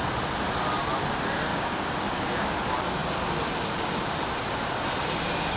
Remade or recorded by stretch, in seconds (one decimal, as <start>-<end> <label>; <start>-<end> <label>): 0.0-1.5 recorded; 1.5-2.5 remade; 2.5-5.6 recorded